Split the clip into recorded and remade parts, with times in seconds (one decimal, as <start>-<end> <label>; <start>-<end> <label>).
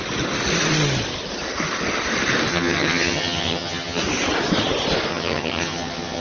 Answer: 0.0-2.5 recorded; 2.5-4.0 remade; 4.0-5.1 recorded; 5.1-6.2 remade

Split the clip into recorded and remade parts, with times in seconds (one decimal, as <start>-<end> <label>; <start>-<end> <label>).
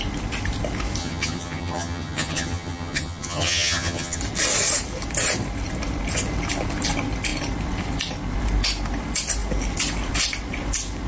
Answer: 0.0-1.0 recorded; 1.0-4.2 remade; 4.2-11.1 recorded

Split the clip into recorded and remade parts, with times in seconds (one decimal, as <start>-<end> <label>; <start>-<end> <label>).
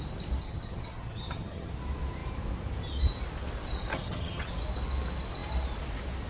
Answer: 0.0-0.4 recorded; 0.4-1.7 remade; 1.7-3.9 recorded; 3.9-4.5 remade; 4.5-6.3 recorded